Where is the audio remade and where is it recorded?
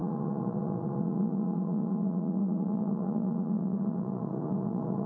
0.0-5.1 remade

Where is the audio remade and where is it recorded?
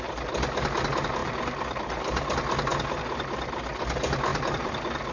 0.0-1.2 recorded; 1.2-1.8 remade; 1.8-4.3 recorded; 4.3-5.1 remade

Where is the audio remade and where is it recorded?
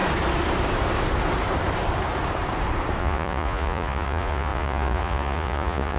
0.0-3.0 recorded; 3.0-6.0 remade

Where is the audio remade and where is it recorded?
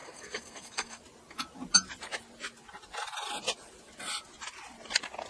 0.0-1.0 remade; 1.0-5.3 recorded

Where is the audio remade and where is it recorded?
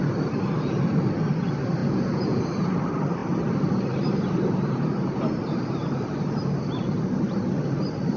0.0-1.8 recorded; 1.8-2.4 remade; 2.4-8.2 recorded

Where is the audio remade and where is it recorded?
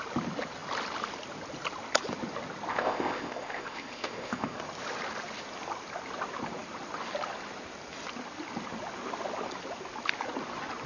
0.0-2.7 recorded; 2.7-4.6 remade; 4.6-10.9 recorded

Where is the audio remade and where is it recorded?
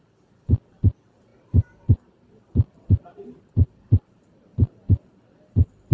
0.0-1.3 recorded; 1.3-4.8 remade; 4.8-5.9 recorded